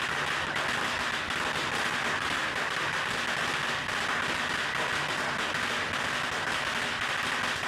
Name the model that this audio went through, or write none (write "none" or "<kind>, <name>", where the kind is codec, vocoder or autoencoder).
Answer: none